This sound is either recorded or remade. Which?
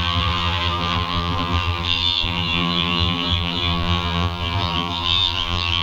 remade